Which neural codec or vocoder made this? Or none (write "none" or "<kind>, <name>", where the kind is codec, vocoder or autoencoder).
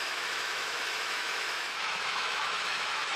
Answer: autoencoder, DAC-VAE